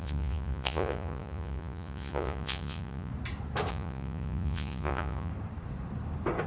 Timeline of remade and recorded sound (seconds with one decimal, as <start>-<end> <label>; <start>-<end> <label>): 0.0-3.1 remade; 3.1-3.7 recorded; 3.7-5.3 remade; 5.3-6.5 recorded